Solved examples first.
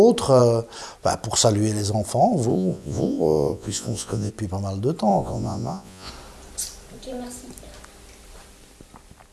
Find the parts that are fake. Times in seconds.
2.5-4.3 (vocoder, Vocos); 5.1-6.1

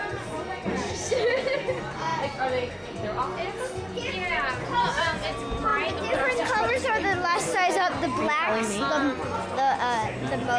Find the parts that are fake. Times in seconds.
none